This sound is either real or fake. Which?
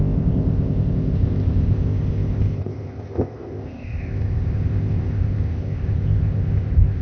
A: fake